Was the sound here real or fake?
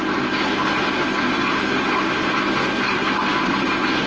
real